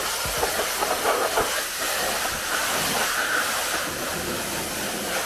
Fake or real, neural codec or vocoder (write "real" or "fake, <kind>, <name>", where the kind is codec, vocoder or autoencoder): real